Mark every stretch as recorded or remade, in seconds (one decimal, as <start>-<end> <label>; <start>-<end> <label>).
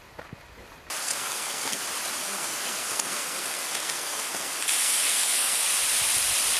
0.0-1.0 recorded; 1.0-1.8 remade; 1.8-2.2 recorded; 2.2-5.7 remade; 5.7-6.6 recorded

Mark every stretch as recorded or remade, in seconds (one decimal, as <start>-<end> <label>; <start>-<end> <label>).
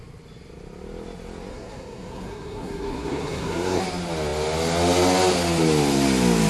0.0-1.5 recorded; 1.5-3.8 remade; 3.8-6.5 recorded